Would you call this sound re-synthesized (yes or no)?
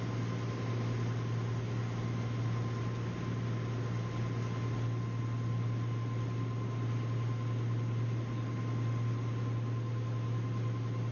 no